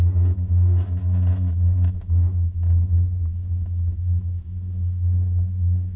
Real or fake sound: fake